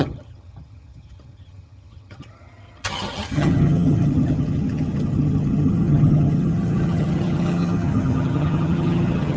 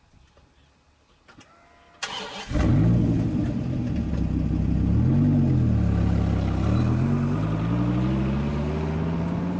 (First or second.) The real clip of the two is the second